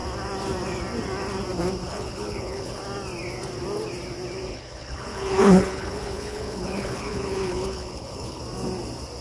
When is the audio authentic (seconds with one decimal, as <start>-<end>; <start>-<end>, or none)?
0.0-1.9; 2.8-4.5; 8.4-9.2